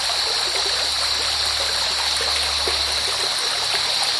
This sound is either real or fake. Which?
real